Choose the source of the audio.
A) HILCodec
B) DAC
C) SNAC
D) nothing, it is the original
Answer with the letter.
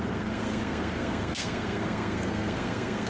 C